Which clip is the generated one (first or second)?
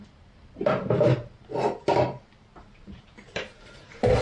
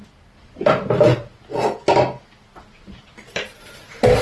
first